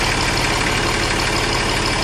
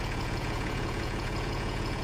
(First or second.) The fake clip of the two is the second